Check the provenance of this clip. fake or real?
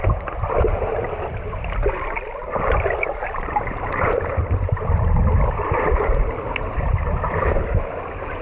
real